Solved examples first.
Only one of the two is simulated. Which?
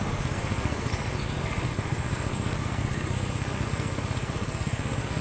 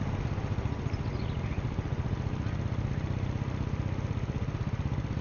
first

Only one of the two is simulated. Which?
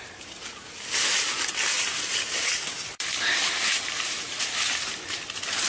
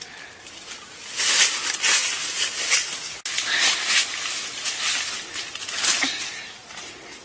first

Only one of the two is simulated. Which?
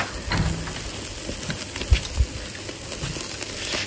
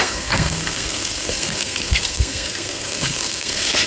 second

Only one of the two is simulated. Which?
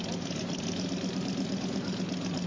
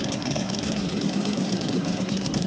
second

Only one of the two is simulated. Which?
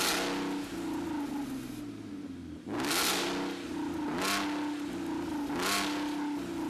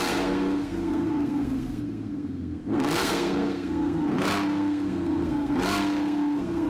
second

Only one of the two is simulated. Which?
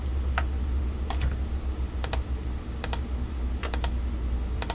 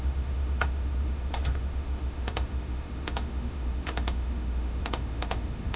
second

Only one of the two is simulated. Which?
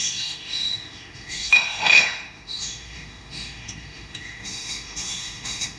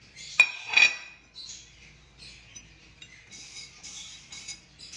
first